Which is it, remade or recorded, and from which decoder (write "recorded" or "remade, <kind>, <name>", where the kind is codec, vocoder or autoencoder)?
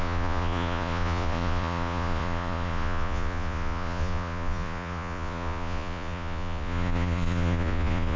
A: remade, vocoder, Vocos